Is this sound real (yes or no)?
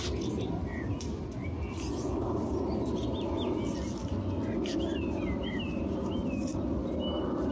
yes